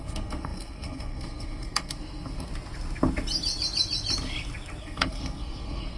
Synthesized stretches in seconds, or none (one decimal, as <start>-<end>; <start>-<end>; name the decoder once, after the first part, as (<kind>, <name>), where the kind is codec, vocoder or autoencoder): 0.0-2.5 (codec, SNAC); 4.8-6.0